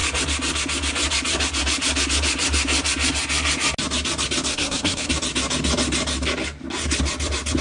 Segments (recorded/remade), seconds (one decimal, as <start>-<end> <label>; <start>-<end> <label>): 0.0-4.5 recorded; 4.5-5.1 remade; 5.1-7.6 recorded